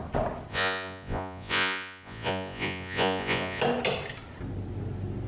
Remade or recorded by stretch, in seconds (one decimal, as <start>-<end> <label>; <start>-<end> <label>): 0.0-0.5 recorded; 0.5-3.6 remade; 3.6-5.3 recorded